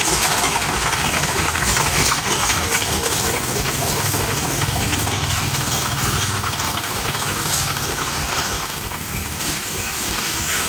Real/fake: fake